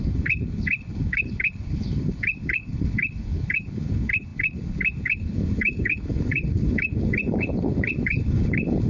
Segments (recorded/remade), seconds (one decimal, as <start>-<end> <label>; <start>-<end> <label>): 0.0-8.9 remade